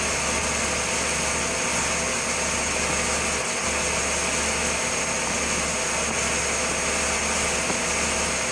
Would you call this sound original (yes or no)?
yes